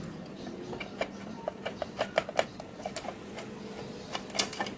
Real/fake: real